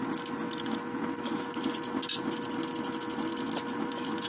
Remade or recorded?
recorded